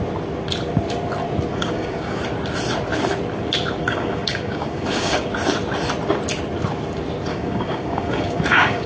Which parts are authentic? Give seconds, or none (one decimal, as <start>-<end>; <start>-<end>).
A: 0.0-1.5; 2.2-3.8; 5.3-7.3